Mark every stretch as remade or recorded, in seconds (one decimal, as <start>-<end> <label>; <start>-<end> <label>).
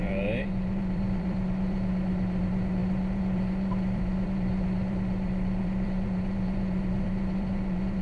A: 0.0-8.0 remade